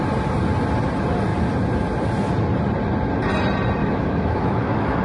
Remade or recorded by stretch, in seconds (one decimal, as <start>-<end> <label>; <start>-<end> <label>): 0.0-3.8 recorded; 3.8-5.0 remade